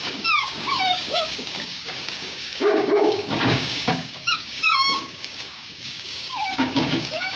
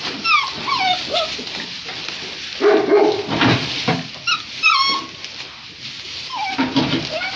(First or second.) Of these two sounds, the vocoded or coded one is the first